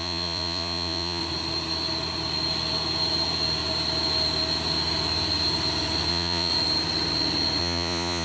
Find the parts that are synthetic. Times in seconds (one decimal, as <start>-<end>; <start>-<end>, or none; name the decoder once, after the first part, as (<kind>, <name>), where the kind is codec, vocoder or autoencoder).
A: 0.0-1.2 (vocoder, Vocos); 6.1-6.5; 7.6-8.2